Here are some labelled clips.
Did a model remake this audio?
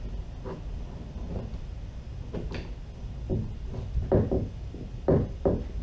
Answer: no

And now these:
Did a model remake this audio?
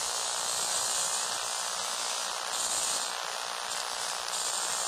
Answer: no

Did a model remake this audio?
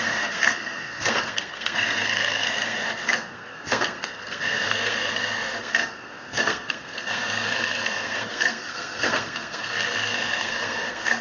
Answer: yes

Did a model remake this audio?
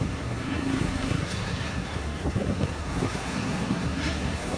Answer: yes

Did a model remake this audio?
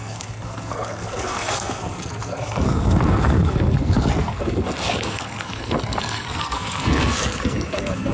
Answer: yes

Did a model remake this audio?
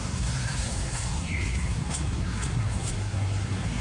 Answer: yes